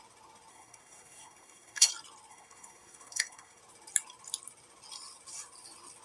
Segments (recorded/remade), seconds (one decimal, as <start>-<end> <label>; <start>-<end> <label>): 0.0-0.5 recorded; 0.5-1.9 remade; 1.9-2.3 recorded; 2.3-3.6 remade; 3.6-6.0 recorded